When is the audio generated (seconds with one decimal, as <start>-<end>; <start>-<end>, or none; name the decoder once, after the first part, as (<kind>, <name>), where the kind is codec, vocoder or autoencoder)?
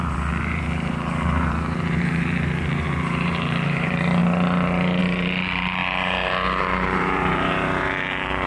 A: 0.0-4.2 (vocoder, BigVGAN v2); 5.0-5.8; 6.6-8.5